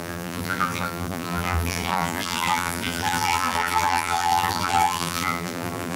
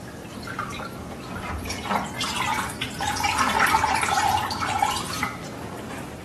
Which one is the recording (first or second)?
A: second